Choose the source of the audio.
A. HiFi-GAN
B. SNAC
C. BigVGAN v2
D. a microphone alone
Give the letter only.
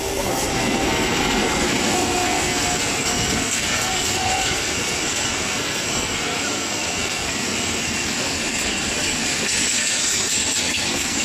B